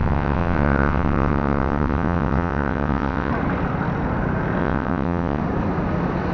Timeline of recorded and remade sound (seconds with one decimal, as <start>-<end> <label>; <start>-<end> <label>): 0.0-3.3 remade; 3.3-4.6 recorded; 4.6-5.4 remade; 5.4-6.3 recorded